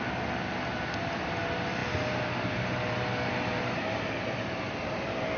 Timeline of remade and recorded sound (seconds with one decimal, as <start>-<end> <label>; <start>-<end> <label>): 0.0-5.4 recorded